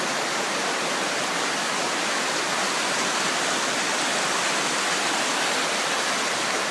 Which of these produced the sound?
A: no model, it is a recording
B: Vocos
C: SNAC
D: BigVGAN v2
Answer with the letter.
A